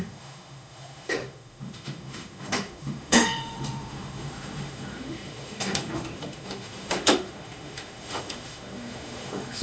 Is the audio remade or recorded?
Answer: remade